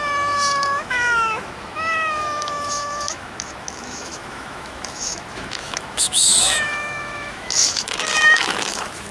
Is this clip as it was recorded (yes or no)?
no